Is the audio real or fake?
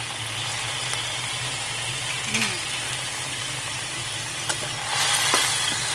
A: real